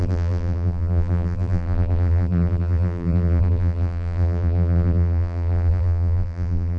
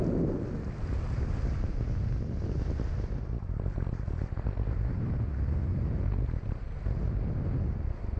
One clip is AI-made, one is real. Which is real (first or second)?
second